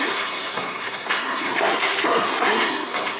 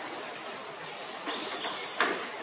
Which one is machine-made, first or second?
first